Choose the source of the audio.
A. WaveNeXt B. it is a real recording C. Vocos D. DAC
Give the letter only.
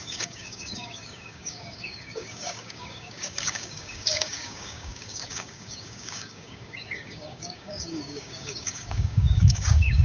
D